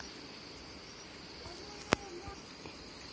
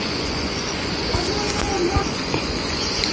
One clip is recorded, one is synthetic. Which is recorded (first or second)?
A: first